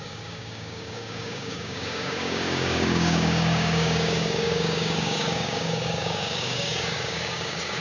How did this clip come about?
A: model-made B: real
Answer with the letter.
A